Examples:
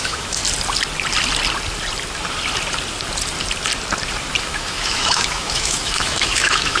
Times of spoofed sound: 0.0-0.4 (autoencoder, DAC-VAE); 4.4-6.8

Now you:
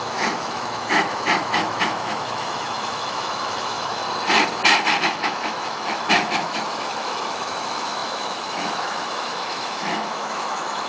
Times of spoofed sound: 0.0-4.0 (autoencoder, DAC-VAE); 5.0-10.9

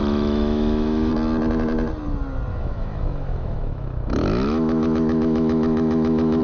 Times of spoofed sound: 0.0-1.1 (autoencoder, DAC-VAE); 2.5-6.4

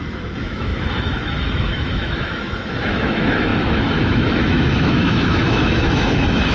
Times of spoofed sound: 0.0-6.5 (autoencoder, DAC-VAE)

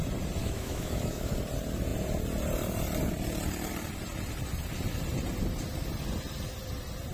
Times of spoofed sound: 0.4-1.3 (autoencoder, DAC-VAE)

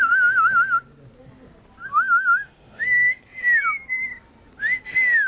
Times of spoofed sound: 1.9-3.2 (autoencoder, DAC-VAE)

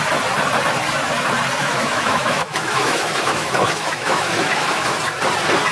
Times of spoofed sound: 1.6-5.0 (autoencoder, DAC-VAE)

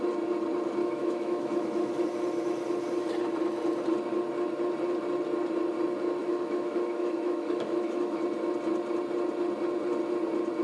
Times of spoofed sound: 0.8-2.0 (autoencoder, DAC-VAE); 6.2-8.2